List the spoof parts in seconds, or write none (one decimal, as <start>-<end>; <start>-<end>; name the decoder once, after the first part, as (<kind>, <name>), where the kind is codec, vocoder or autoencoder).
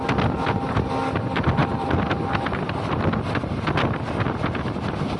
1.6-3.0 (vocoder, BigVGAN v2)